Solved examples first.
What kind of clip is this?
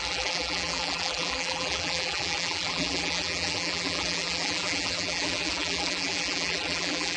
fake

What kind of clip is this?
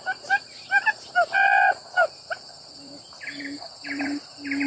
fake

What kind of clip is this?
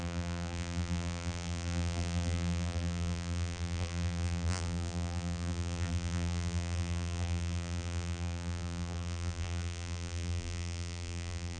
fake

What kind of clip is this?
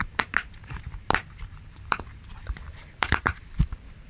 fake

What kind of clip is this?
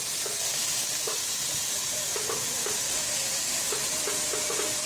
fake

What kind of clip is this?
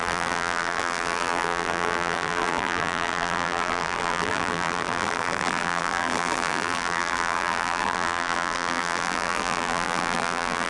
fake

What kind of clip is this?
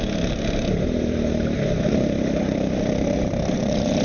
fake